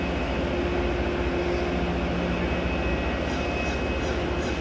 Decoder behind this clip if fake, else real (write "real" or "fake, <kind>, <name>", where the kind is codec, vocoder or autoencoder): real